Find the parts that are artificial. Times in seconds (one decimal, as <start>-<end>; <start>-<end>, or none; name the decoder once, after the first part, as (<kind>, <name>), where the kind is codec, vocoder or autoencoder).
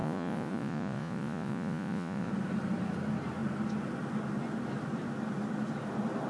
0.0-2.3 (vocoder, Vocos)